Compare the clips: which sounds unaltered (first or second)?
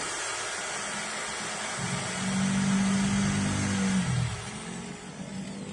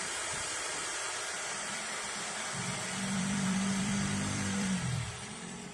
first